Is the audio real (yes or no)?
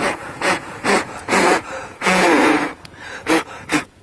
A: no